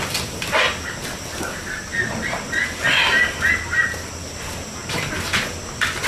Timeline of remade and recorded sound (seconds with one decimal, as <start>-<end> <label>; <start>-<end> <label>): 0.0-6.1 recorded